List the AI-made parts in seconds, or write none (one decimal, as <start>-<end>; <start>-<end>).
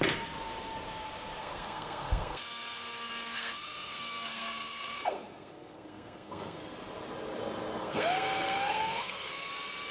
1.4-6.6; 7.8-9.5